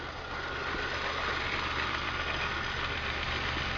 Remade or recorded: recorded